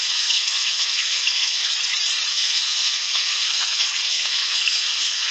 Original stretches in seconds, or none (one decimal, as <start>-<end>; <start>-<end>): 1.7-2.3